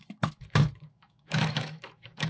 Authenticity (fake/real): fake